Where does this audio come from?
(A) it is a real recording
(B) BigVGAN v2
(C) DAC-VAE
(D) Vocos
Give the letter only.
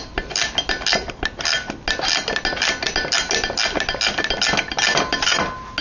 A